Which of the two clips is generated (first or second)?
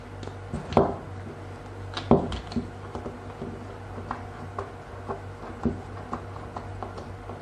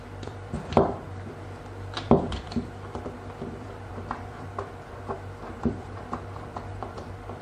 second